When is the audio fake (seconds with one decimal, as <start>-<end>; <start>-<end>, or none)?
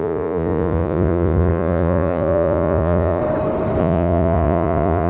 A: 0.0-3.2; 3.8-5.1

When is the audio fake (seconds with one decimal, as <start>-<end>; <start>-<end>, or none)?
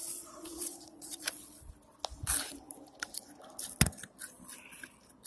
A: 0.0-1.7